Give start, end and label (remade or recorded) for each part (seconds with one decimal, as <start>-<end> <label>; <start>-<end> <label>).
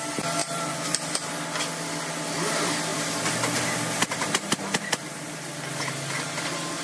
0.0-0.4 recorded; 0.4-1.3 remade; 1.3-2.9 recorded; 2.9-5.9 remade; 5.9-6.8 recorded